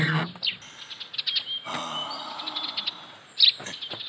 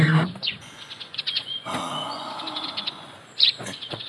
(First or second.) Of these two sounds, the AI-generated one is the second